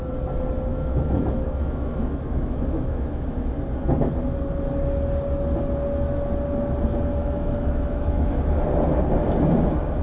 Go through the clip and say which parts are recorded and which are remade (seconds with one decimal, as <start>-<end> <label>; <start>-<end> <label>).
0.0-0.7 recorded; 0.7-3.5 remade; 3.5-7.2 recorded; 7.2-8.4 remade; 8.4-10.0 recorded